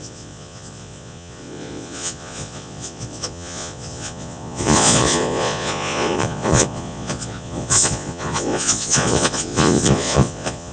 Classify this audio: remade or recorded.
remade